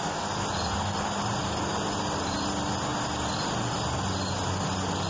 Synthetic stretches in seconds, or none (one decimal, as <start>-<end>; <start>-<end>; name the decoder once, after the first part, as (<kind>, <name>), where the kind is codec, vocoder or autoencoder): none